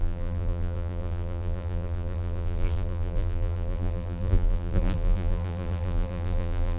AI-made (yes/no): yes